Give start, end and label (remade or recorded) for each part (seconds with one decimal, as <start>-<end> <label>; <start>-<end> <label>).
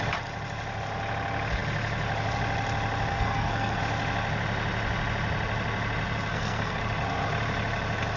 0.0-3.1 recorded; 3.1-3.8 remade; 3.8-6.3 recorded; 6.3-6.8 remade; 6.8-8.2 recorded